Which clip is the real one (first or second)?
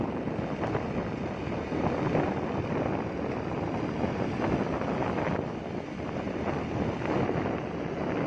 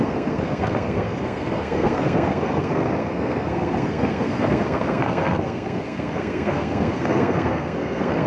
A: first